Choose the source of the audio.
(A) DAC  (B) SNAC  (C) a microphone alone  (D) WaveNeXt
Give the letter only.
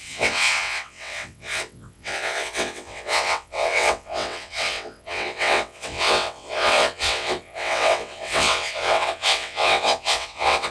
D